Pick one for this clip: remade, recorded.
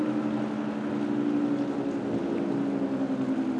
recorded